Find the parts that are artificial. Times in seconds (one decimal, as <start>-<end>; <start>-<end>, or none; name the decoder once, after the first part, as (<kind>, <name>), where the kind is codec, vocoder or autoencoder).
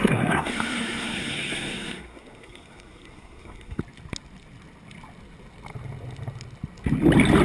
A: 0.0-3.8 (codec, SNAC)